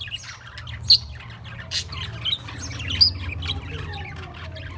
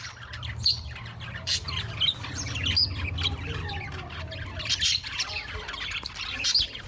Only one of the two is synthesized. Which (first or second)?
second